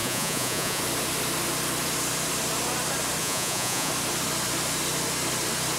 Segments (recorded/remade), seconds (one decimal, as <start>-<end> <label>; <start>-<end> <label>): 0.0-0.8 remade; 0.8-3.2 recorded; 3.2-3.9 remade; 3.9-5.8 recorded